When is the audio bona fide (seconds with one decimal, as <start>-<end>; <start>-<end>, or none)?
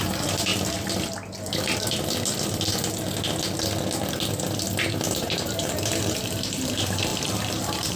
0.5-4.8